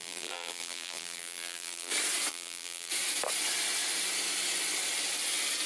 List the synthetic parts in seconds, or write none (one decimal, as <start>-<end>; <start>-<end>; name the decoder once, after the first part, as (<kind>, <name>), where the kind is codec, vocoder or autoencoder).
0.0-1.9 (vocoder, BigVGAN v2); 2.3-2.9